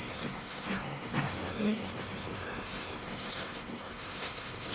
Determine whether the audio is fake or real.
fake